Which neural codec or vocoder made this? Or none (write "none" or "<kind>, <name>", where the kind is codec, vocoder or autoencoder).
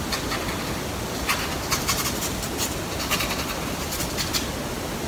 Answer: none